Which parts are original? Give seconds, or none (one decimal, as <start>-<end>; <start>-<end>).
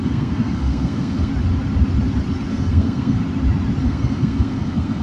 1.3-2.5; 3.2-3.8